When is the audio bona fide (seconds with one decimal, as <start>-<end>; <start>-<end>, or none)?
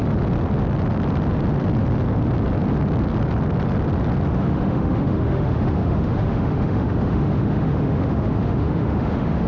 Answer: 0.0-4.3